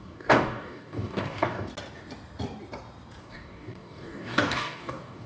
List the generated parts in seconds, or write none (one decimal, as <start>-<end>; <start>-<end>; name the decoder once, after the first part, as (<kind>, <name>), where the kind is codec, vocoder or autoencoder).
0.0-1.7 (codec, DAC); 3.2-5.3